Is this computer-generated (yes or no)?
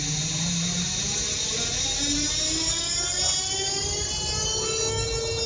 no